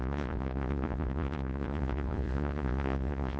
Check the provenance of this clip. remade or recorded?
remade